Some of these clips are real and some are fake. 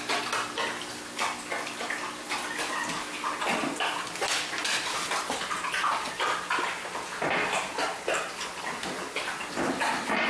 real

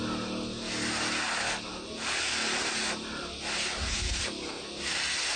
real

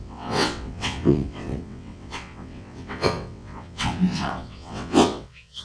fake